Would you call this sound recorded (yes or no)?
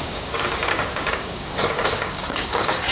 no